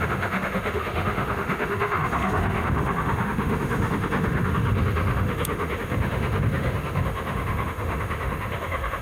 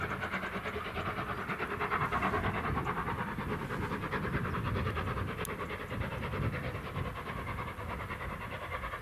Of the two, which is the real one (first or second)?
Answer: second